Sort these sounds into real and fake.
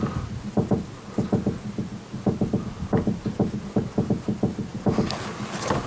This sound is real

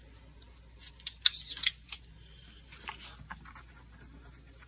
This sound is real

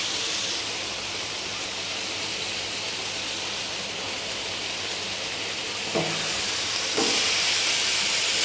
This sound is real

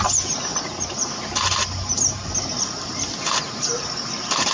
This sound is real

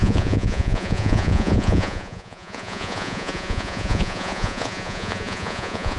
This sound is fake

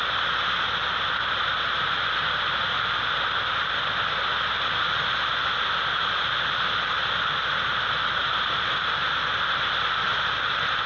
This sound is real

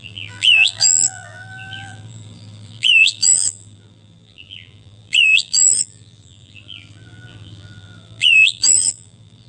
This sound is fake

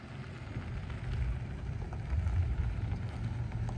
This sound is real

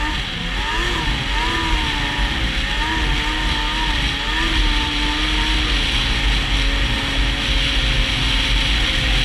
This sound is real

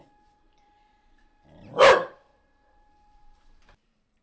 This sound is fake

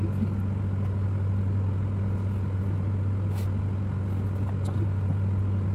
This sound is real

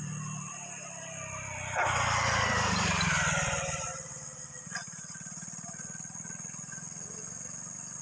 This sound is fake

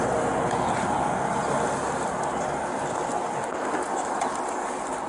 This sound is real